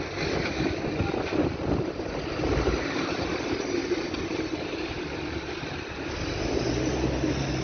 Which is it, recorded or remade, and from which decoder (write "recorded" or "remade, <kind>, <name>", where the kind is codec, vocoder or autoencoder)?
recorded